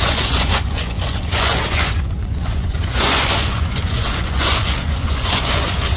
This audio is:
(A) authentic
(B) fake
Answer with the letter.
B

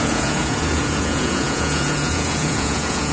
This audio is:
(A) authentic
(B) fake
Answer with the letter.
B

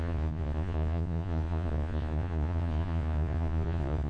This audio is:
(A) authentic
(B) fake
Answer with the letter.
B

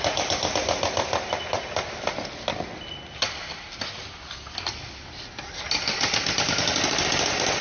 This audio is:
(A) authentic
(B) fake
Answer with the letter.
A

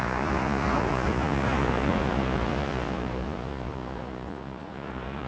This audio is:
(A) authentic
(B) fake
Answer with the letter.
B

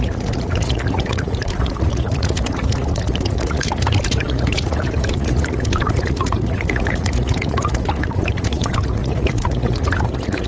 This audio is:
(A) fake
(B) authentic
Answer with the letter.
A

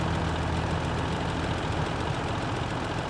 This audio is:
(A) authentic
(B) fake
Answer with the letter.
A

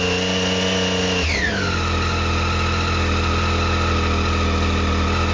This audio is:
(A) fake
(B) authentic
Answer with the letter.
B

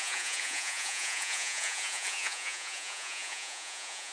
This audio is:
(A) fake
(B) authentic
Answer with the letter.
A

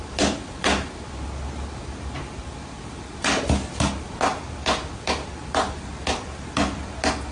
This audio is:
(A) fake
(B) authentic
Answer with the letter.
B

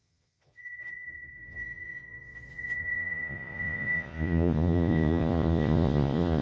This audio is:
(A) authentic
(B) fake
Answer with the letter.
B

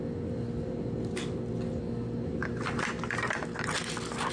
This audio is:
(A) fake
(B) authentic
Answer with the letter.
B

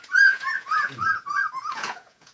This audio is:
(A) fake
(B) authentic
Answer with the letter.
A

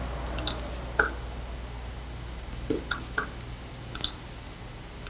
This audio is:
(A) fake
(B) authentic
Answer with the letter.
B